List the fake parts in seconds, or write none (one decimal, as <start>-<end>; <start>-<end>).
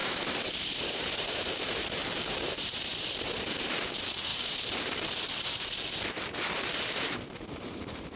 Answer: 0.0-2.9; 3.6-8.2